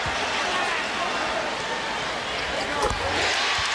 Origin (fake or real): real